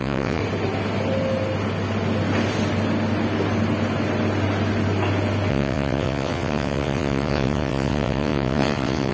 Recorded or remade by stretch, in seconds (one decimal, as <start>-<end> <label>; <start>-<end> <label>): 0.0-0.4 remade; 0.4-5.5 recorded; 5.5-9.1 remade